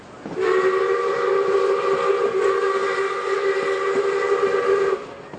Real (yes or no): yes